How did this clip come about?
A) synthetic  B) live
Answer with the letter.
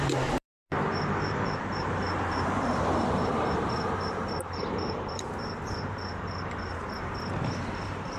A